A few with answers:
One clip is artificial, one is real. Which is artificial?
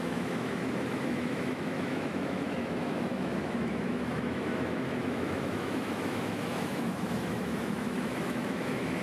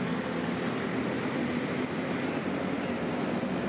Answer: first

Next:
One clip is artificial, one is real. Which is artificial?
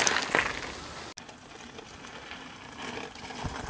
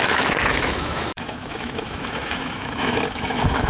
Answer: second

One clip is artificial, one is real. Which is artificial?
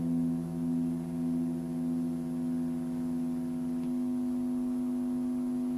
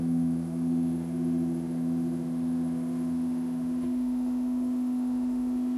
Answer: second